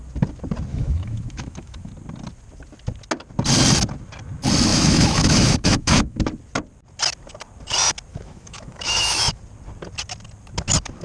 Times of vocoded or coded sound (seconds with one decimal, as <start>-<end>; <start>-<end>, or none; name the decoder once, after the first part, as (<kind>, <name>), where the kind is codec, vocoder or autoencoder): 0.7-1.9 (autoencoder, DAC-VAE); 4.7-6.2; 8.1-9.4